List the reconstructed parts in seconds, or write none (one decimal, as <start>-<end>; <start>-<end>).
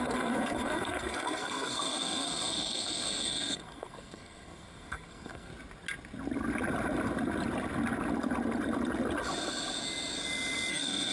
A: 0.0-5.5; 10.7-11.1